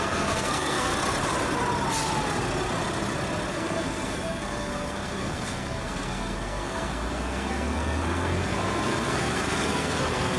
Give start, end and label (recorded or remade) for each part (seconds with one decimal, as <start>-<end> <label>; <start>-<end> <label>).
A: 0.0-0.9 remade; 0.9-3.5 recorded; 3.5-10.4 remade